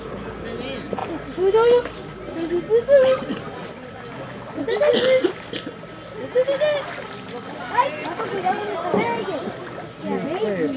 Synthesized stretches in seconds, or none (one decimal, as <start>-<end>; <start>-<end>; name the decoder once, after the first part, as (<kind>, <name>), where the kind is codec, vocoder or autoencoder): none